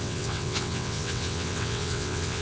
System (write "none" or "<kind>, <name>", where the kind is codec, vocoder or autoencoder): vocoder, WaveNeXt